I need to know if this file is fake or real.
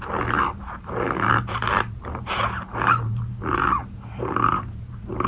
fake